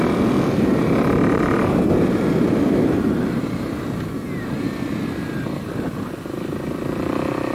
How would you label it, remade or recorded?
recorded